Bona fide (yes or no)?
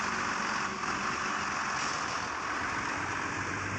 yes